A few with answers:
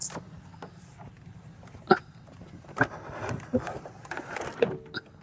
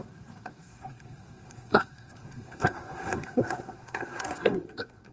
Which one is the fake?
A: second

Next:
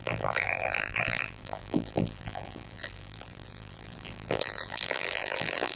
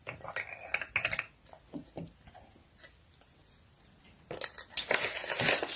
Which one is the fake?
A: first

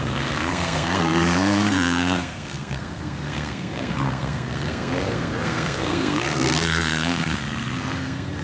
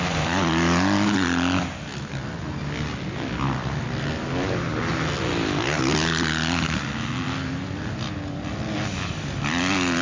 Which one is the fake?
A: first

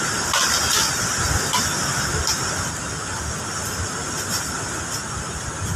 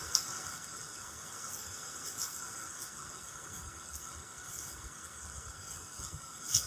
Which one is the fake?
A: second